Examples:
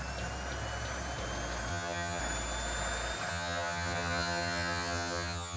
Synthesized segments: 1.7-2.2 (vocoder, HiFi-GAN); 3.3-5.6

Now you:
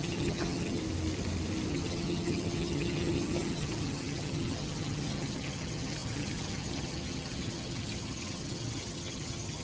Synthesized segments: 0.0-0.8 (vocoder, HiFi-GAN); 1.7-9.6

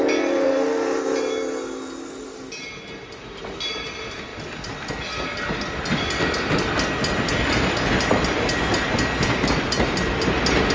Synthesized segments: none

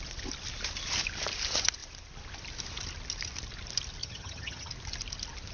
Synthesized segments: 4.0-4.7 (vocoder, HiFi-GAN)

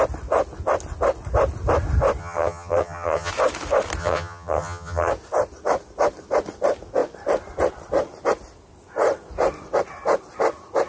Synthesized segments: 2.2-3.3 (vocoder, HiFi-GAN); 4.0-5.1